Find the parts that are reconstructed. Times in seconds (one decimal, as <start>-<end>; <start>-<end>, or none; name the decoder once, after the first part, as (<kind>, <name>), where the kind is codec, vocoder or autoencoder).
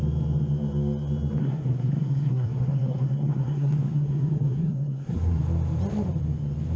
1.4-5.4 (codec, SNAC)